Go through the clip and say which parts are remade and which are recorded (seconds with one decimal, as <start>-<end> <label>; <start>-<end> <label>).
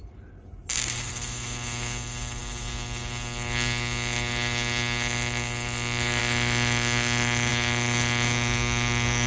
0.0-9.3 recorded